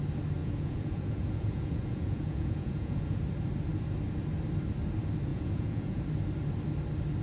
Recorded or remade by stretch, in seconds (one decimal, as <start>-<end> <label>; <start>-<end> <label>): 0.0-0.4 recorded; 0.4-3.2 remade; 3.2-5.3 recorded; 5.3-6.0 remade; 6.0-7.2 recorded